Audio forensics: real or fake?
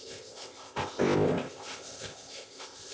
fake